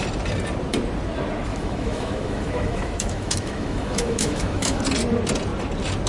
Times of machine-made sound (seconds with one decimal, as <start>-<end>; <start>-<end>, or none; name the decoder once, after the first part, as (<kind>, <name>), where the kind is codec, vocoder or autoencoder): 1.5-4.8 (autoencoder, DAC-VAE)